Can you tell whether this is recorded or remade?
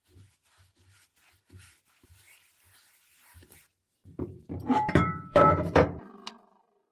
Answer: remade